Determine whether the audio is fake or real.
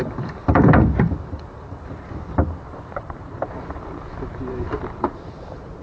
fake